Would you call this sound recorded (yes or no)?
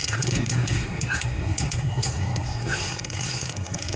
no